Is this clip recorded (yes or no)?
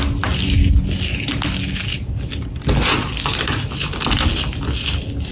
yes